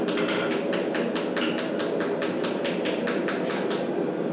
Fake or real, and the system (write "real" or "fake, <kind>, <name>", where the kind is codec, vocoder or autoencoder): real